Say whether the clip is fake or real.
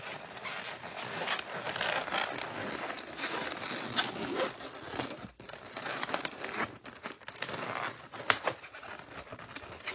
real